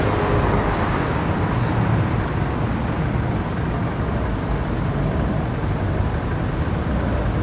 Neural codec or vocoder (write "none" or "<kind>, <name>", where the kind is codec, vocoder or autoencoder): none